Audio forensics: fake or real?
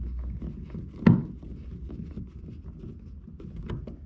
real